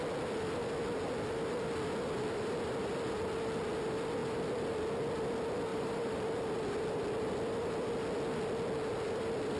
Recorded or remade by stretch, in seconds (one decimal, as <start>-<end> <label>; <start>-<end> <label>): 0.0-5.7 recorded; 5.7-6.4 remade; 6.4-9.6 recorded